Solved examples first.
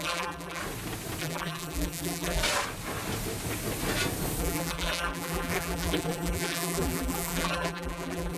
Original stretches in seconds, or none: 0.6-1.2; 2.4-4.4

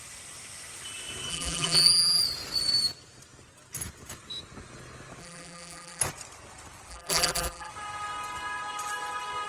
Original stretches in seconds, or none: 0.0-1.3; 2.2-5.2; 6.0-6.9; 7.7-9.5

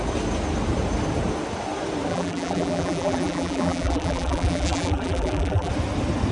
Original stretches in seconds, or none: 0.0-2.1; 5.7-6.3

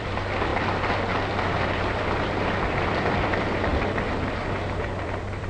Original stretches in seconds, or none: 3.7-4.2

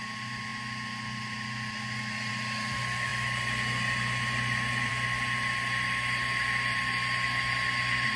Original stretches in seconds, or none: 0.0-8.2

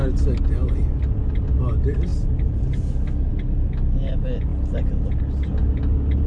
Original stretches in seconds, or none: 0.0-6.3

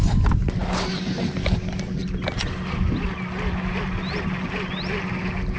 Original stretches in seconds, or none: 0.0-5.6